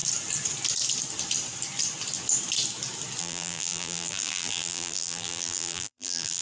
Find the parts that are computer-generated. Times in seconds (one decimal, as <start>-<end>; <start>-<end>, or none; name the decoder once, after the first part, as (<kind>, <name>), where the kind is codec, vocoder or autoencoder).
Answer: 3.2-6.4 (vocoder, BigVGAN v2)